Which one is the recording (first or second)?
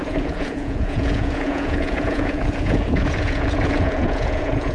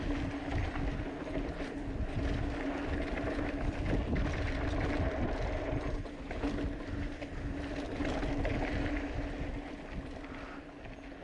second